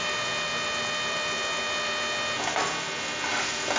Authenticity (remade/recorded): recorded